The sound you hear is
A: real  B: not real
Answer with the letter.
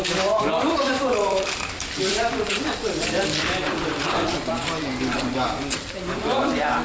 B